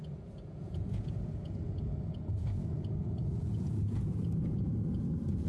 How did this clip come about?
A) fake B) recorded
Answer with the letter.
A